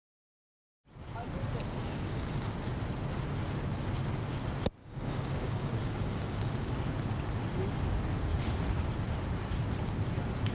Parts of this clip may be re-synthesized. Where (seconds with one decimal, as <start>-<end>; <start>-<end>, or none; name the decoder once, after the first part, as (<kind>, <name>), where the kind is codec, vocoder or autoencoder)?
1.8-2.5 (codec, DAC); 4.8-6.7